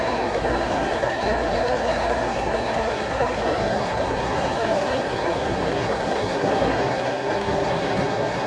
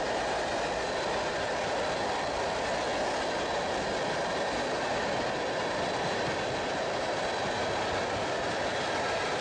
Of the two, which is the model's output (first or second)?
first